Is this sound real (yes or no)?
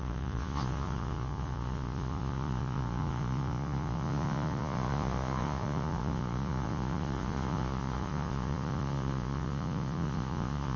no